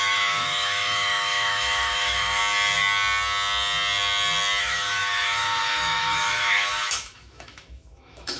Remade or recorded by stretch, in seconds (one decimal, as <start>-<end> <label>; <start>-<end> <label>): 0.0-2.4 remade; 2.4-4.6 recorded; 4.6-8.4 remade